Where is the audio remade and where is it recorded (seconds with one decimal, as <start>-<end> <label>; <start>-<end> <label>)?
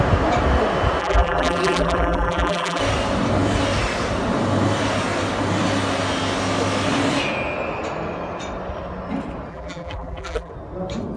0.0-1.0 recorded; 1.0-2.8 remade; 2.8-9.5 recorded; 9.5-10.5 remade; 10.5-11.2 recorded